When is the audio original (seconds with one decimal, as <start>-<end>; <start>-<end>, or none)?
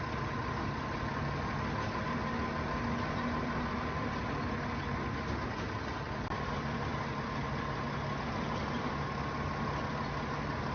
0.0-10.7